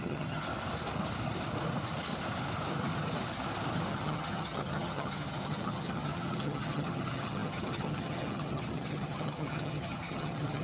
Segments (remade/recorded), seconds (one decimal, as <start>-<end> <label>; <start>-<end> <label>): 0.0-0.5 remade; 0.5-3.9 recorded; 3.9-10.6 remade